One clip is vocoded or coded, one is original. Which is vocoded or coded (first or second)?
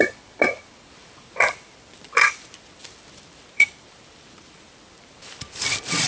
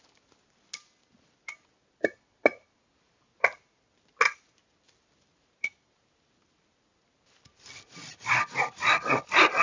first